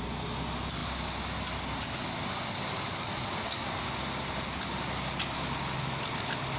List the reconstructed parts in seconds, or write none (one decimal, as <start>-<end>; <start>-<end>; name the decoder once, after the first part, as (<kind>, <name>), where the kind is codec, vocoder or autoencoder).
none